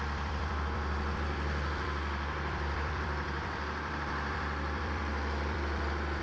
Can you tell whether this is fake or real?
fake